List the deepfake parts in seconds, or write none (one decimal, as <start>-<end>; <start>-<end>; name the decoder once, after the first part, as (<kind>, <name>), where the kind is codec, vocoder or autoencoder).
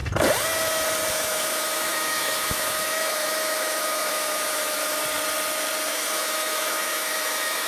1.1-5.0 (autoencoder, DAC-VAE); 5.9-7.7